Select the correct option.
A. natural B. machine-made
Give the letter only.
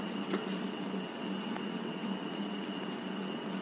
B